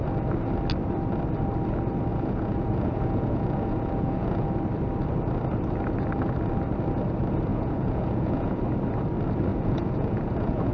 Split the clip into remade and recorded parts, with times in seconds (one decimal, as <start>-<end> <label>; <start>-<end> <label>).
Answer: 0.0-2.1 recorded; 2.1-4.5 remade; 4.5-7.5 recorded; 7.5-8.6 remade; 8.6-9.5 recorded; 9.5-10.7 remade